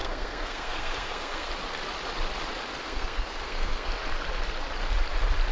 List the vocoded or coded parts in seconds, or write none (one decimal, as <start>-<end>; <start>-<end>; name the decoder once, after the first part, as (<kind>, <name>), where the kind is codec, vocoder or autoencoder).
0.0-1.5 (codec, SNAC); 2.8-3.9